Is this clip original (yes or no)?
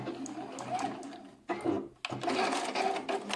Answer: yes